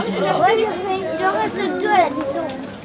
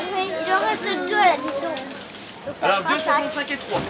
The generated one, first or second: first